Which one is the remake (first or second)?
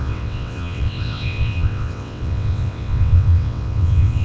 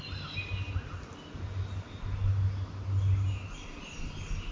first